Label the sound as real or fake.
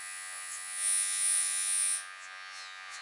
fake